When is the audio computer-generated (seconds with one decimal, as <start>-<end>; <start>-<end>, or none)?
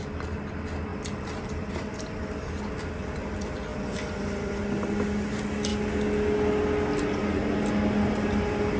0.9-2.5; 3.7-4.6